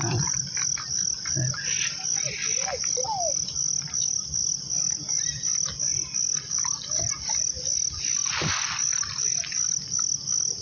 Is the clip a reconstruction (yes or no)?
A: yes